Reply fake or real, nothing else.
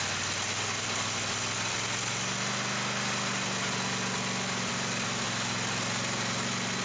real